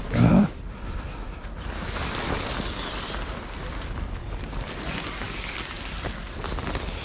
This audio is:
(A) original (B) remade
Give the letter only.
A